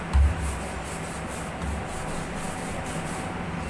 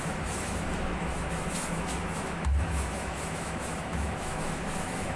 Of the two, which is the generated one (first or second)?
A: second